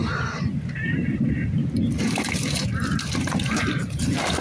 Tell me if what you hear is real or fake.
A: fake